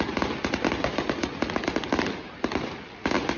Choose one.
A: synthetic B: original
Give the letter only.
B